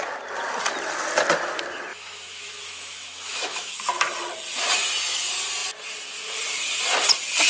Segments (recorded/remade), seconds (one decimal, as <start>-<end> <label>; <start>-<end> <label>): 0.0-1.9 recorded; 1.9-3.7 remade; 3.7-7.5 recorded